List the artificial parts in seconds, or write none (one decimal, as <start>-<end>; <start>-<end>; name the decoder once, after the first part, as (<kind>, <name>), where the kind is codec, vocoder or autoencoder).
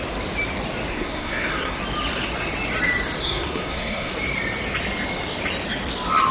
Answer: 0.9-1.8 (codec, SNAC); 3.2-4.1